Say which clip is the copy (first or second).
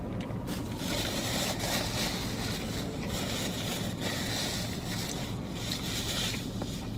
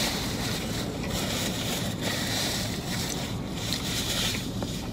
second